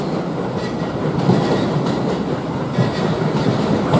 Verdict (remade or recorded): recorded